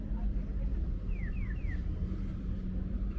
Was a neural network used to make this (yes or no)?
no